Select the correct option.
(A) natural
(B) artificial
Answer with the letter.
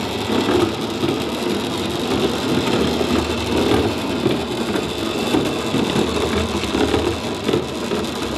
A